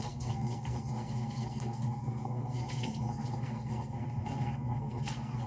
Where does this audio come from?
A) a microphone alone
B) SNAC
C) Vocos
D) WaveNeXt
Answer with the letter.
B